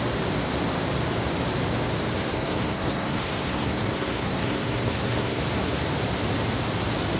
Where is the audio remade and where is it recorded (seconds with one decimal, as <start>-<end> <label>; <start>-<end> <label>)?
0.0-2.1 recorded; 2.1-5.4 remade; 5.4-7.2 recorded